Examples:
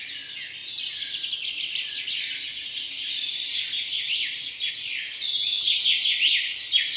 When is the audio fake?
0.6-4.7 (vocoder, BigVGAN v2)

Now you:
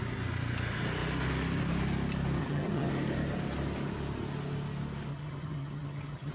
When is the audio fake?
2.4-2.9 (vocoder, HiFi-GAN); 5.1-6.3

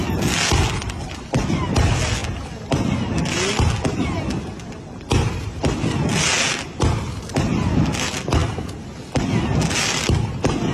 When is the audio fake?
none

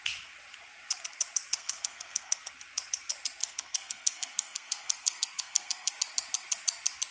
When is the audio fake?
1.5-2.5 (codec, SNAC); 3.4-5.9

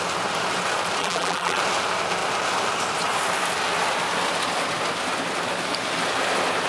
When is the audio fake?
1.0-1.6 (vocoder, BigVGAN v2)

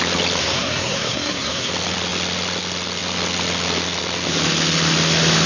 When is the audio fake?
0.4-1.7 (codec, SNAC)

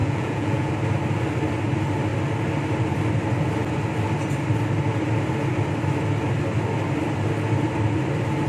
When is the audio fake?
0.0-0.7 (vocoder, Vocos)